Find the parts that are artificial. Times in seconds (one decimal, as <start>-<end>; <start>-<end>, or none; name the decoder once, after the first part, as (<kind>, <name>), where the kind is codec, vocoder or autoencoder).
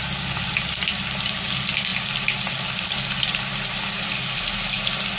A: none